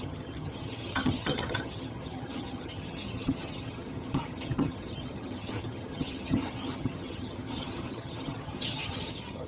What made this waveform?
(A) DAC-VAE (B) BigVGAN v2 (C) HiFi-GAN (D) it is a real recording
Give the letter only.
C